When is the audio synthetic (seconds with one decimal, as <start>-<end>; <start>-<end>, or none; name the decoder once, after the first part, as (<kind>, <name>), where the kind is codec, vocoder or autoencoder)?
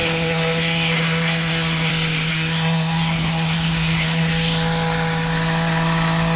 0.0-1.9 (codec, SNAC); 2.3-4.3